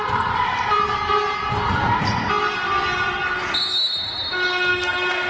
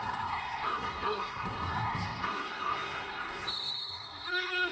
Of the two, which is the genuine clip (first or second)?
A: first